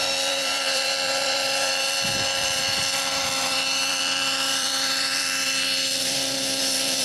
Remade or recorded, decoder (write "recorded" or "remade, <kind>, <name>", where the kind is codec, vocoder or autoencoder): remade, vocoder, BigVGAN v2